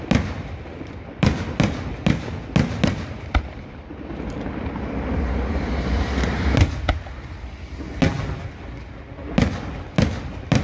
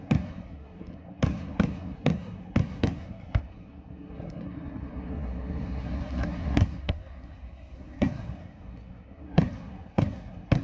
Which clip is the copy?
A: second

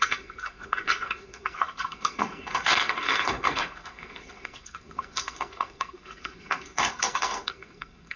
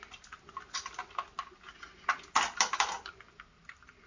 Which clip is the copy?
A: first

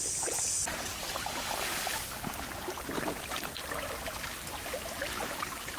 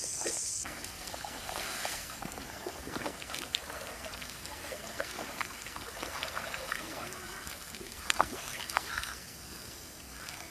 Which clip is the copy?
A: second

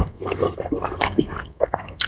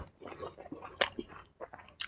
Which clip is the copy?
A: first